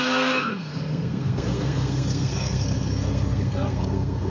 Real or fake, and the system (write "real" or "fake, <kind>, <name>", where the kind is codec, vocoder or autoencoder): fake, codec, SNAC